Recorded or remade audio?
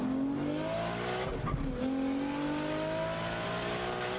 recorded